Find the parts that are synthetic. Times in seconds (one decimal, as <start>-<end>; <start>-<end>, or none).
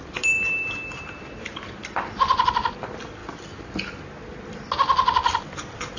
0.0-1.8; 2.5-3.2